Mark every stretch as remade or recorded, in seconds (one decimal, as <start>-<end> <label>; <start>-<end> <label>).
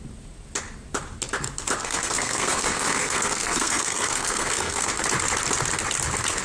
0.0-1.8 recorded; 1.8-4.9 remade; 4.9-6.4 recorded